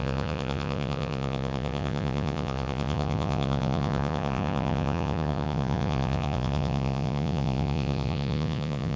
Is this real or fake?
fake